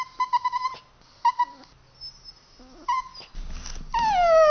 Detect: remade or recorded recorded